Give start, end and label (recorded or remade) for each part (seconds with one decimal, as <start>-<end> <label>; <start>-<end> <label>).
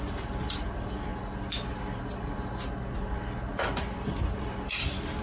0.0-1.1 remade; 1.1-3.1 recorded; 3.1-5.2 remade